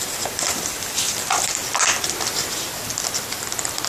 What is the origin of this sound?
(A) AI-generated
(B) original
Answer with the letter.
B